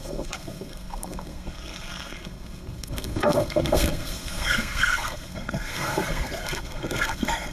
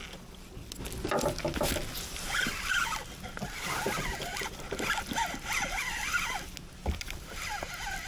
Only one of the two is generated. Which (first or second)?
first